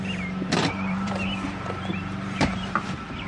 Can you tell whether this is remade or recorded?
remade